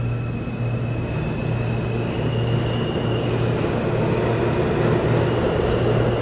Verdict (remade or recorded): recorded